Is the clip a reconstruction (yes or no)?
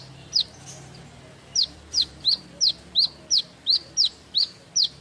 no